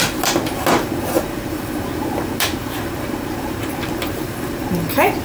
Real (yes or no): no